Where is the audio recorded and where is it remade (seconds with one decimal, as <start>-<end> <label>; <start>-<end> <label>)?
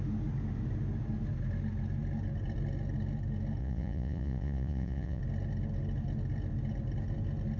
0.0-3.6 recorded; 3.6-5.2 remade; 5.2-7.6 recorded